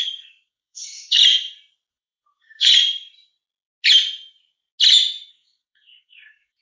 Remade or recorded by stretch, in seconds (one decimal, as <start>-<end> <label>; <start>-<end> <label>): 0.0-1.2 remade; 1.2-1.9 recorded; 1.9-2.7 remade; 2.7-5.3 recorded; 5.3-6.6 remade